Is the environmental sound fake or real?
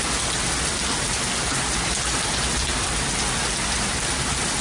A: real